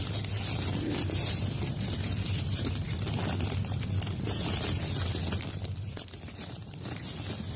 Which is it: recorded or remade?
recorded